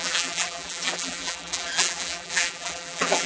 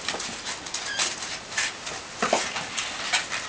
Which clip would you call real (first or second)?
second